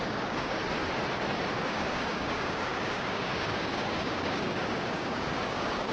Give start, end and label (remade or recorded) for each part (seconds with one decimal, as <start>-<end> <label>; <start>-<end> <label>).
0.0-0.6 remade; 0.6-1.5 recorded; 1.5-5.9 remade